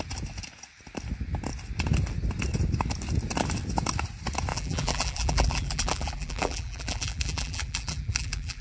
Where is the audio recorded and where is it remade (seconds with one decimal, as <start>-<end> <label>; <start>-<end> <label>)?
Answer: 0.0-4.5 recorded; 4.5-8.6 remade